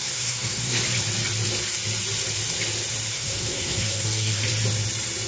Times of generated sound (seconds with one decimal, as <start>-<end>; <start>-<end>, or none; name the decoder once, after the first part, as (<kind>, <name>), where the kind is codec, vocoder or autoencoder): 0.0-0.8 (codec, SNAC); 3.1-4.4